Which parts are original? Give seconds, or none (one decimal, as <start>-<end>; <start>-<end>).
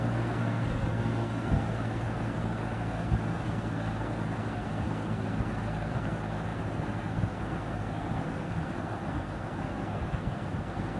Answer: none